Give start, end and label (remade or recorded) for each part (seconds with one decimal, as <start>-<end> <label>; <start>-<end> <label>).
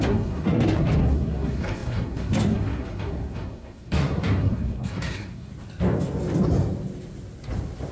0.0-5.5 remade; 5.5-7.9 recorded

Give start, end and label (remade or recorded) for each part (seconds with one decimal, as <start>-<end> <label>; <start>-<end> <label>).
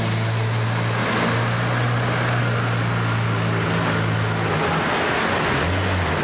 0.0-6.2 recorded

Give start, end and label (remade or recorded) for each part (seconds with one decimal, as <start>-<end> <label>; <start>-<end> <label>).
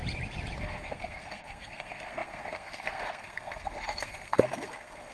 0.0-0.6 recorded; 0.6-5.1 remade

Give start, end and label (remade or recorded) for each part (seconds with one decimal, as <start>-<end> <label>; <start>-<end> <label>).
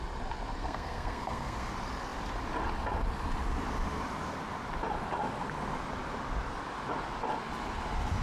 0.0-0.6 recorded; 0.6-1.7 remade; 1.7-8.2 recorded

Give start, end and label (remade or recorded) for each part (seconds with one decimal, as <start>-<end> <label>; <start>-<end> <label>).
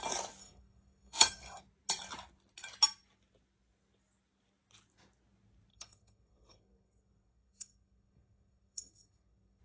0.0-0.4 recorded; 0.4-1.6 remade; 1.6-5.7 recorded; 5.7-9.6 remade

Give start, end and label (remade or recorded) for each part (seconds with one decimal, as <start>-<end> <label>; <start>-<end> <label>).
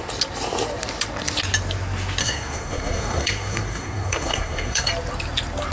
0.0-2.2 recorded; 2.2-4.9 remade; 4.9-5.7 recorded